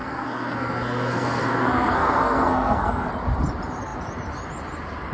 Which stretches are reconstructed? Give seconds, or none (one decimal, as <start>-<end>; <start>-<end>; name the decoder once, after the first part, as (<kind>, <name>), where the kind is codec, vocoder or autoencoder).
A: 0.0-3.1 (codec, SNAC)